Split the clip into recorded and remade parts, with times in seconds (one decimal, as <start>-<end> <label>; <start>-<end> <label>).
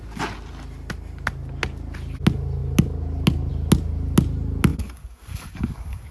0.0-4.7 recorded; 4.7-6.1 remade